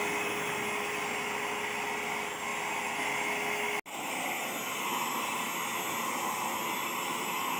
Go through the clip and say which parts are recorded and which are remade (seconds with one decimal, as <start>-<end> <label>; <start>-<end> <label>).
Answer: 0.0-7.6 recorded